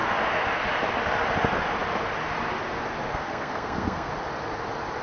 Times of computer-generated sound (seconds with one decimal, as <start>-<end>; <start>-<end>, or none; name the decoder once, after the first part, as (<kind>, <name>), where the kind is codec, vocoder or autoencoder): 3.1-4.1 (codec, SNAC)